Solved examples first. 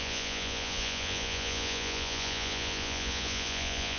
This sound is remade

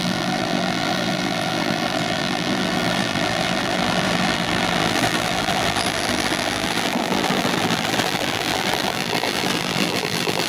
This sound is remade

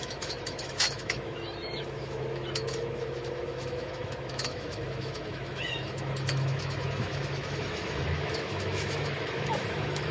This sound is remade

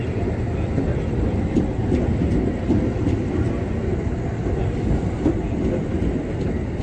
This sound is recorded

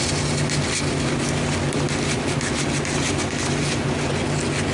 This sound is recorded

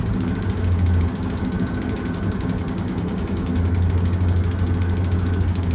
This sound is remade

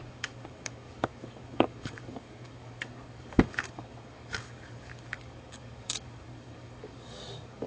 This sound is remade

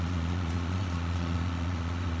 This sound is remade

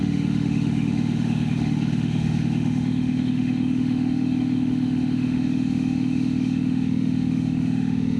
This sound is remade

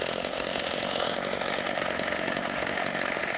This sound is remade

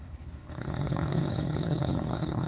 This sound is remade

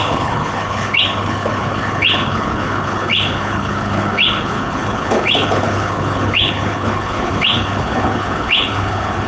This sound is remade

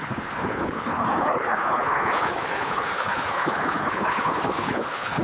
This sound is remade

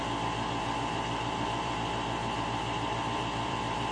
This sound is remade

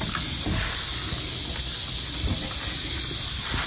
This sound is recorded